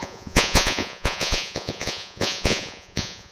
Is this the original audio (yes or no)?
no